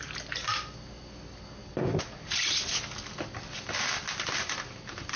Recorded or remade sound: recorded